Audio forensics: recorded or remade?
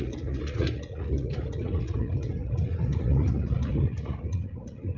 remade